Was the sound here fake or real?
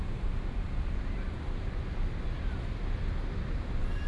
real